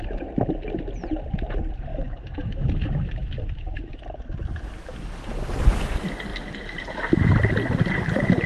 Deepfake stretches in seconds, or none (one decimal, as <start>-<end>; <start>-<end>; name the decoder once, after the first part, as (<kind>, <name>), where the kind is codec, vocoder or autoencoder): 1.9-3.9 (autoencoder, DAC-VAE)